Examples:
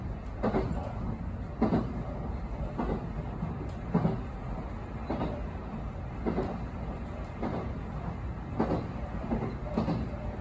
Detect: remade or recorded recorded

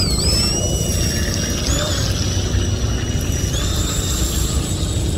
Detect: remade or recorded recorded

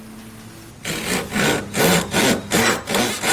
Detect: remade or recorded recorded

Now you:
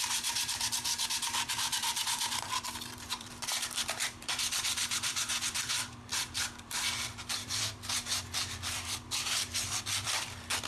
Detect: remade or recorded remade